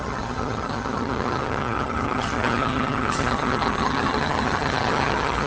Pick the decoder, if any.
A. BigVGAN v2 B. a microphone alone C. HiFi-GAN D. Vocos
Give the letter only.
C